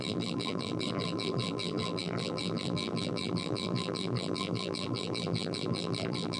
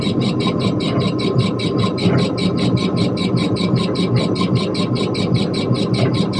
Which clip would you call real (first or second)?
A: second